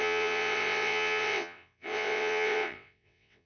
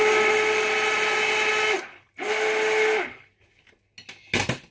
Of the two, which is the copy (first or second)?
first